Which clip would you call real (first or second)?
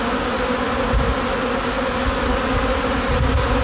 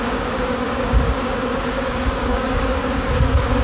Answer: first